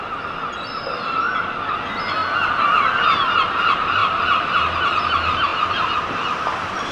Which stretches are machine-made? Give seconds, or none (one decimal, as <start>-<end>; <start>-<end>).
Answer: none